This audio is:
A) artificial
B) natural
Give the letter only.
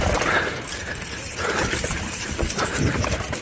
B